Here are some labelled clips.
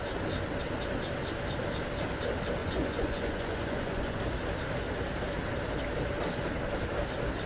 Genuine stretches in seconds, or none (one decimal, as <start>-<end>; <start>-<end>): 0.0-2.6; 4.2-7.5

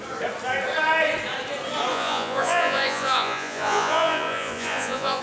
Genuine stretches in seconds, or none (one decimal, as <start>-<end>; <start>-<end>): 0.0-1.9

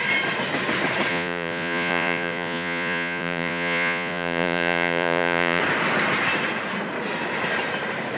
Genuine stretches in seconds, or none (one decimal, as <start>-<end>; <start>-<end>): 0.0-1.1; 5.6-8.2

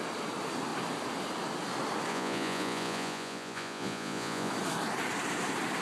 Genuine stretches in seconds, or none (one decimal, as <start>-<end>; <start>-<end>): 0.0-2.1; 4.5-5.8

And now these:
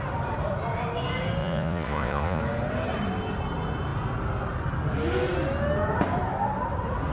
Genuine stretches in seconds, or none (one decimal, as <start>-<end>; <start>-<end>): 0.0-1.4; 2.4-7.1

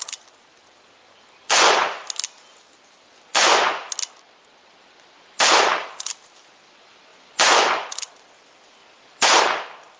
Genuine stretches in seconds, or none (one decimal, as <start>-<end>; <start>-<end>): 0.0-1.4; 2.0-3.3; 3.8-7.1; 7.9-10.0

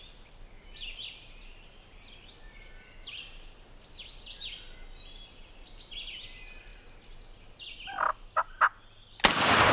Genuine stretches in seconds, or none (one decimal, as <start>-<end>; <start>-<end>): 0.0-9.7